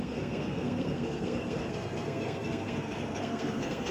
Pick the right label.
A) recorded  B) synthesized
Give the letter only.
B